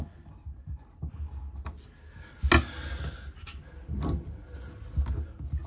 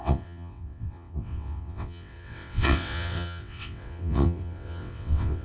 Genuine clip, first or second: first